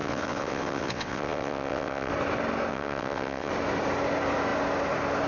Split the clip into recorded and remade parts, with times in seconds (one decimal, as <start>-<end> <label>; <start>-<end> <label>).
0.0-2.1 remade; 2.1-2.7 recorded; 2.7-3.5 remade; 3.5-5.3 recorded